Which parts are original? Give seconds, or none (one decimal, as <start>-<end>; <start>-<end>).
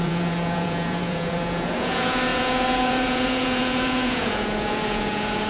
none